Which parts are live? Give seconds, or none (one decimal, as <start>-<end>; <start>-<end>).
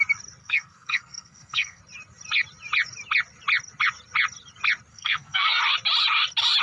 0.0-0.4; 1.8-4.9; 5.6-6.6